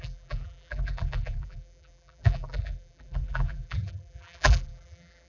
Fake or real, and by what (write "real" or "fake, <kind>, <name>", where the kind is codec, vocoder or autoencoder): fake, vocoder, BigVGAN v2